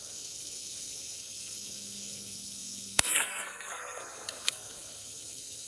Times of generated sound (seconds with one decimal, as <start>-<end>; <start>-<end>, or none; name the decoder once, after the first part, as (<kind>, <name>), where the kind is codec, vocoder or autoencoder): 0.0-5.7 (codec, SNAC)